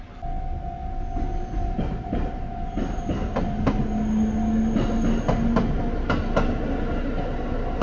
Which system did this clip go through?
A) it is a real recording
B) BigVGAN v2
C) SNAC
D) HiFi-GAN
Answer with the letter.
A